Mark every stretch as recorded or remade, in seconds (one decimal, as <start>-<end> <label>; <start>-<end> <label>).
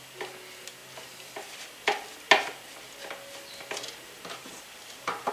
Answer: 0.0-4.4 recorded; 4.4-5.3 remade